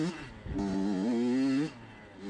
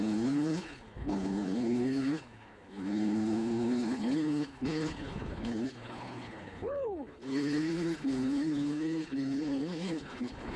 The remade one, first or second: second